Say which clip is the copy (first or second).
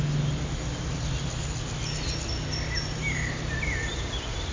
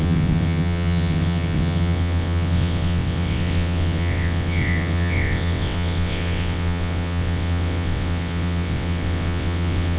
second